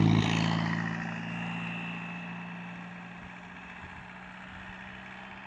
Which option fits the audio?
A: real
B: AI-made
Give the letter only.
A